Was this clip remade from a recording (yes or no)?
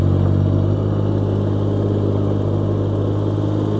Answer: no